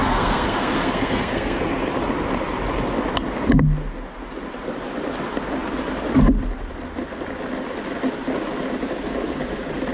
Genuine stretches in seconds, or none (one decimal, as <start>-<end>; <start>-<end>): 1.6-9.9